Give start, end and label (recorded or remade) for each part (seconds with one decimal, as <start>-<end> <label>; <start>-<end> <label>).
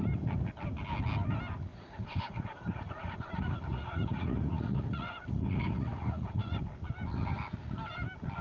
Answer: 0.0-1.7 recorded; 1.7-6.6 remade; 6.6-8.4 recorded